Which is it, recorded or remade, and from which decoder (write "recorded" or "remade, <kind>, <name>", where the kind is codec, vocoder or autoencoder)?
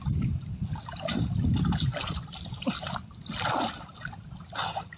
recorded